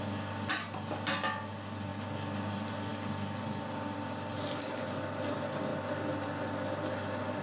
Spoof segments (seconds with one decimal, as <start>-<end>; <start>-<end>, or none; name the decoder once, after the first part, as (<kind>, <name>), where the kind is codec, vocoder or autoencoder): none